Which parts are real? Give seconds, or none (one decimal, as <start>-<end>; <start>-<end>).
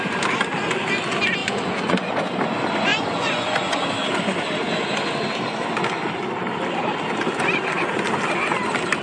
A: 0.0-1.4; 2.1-2.9; 3.8-9.0